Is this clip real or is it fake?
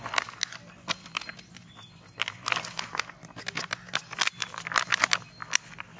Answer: real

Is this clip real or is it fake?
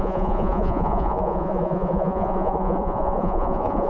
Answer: fake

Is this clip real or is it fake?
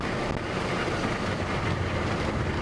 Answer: real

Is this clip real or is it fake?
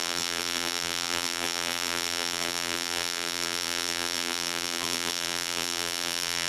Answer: fake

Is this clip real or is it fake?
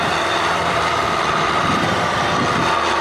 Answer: fake